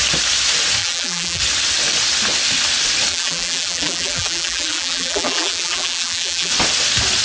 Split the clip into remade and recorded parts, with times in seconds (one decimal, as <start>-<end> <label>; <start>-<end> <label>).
0.0-0.8 recorded; 0.8-1.4 remade; 1.4-3.1 recorded; 3.1-6.5 remade; 6.5-7.2 recorded